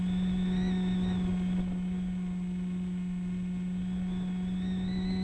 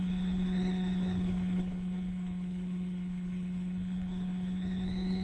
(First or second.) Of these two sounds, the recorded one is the first